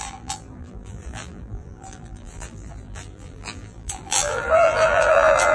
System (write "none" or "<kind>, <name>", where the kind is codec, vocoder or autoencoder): vocoder, BigVGAN v2